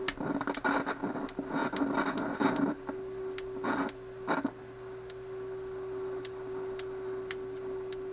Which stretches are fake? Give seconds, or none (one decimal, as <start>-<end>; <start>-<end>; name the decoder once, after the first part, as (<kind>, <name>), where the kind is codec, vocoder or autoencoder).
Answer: none